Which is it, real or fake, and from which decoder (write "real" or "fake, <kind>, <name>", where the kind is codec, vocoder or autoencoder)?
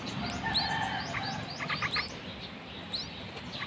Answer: real